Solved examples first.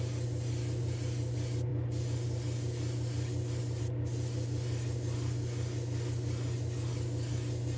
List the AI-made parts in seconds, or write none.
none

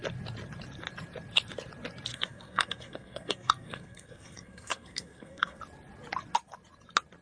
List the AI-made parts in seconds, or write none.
2.1-5.6 (codec, SNAC)

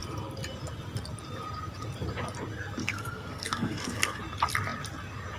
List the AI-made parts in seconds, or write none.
2.8-4.2 (codec, SNAC)

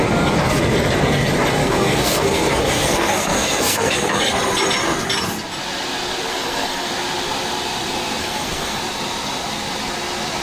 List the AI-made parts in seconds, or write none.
1.6-4.2 (codec, SNAC); 6.3-6.9; 8.2-8.8